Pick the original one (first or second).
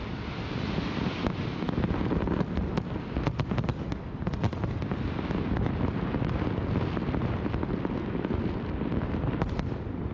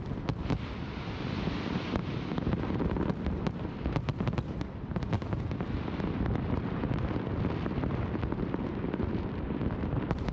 first